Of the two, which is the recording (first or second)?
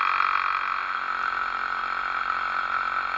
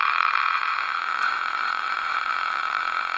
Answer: first